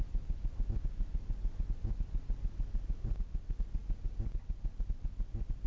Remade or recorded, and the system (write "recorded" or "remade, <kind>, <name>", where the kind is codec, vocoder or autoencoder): recorded